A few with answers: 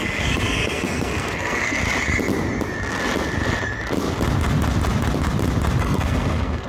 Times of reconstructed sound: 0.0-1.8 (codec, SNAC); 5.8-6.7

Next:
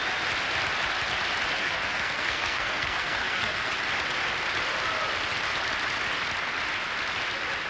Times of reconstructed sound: 1.6-3.7 (codec, SNAC)

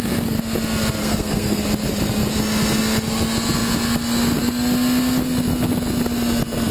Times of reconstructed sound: 1.0-1.6 (codec, SNAC)

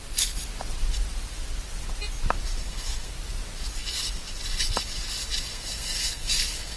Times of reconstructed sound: 2.6-3.1 (codec, SNAC); 5.5-6.8

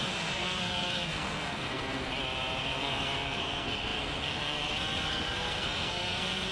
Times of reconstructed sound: 0.0-2.1 (codec, SNAC); 2.6-6.5

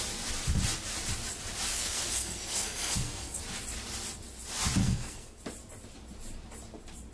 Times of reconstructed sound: 1.7-3.4 (codec, SNAC); 4.8-5.4

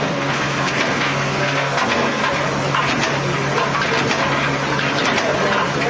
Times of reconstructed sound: 0.0-2.2 (codec, SNAC)